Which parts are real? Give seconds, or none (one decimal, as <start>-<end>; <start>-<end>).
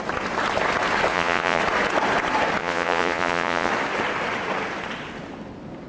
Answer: 0.0-1.1; 1.6-2.6; 3.7-5.9